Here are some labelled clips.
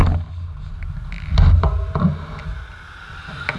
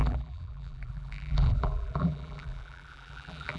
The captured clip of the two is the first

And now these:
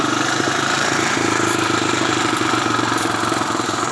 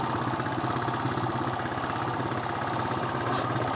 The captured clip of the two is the second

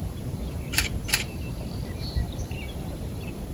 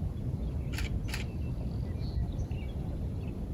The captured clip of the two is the second